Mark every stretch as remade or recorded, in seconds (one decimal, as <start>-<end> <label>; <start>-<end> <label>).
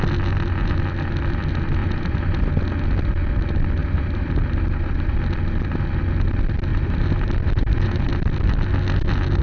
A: 0.0-1.8 recorded; 1.8-2.5 remade; 2.5-3.8 recorded; 3.8-5.2 remade; 5.2-6.7 recorded; 6.7-8.1 remade; 8.1-9.4 recorded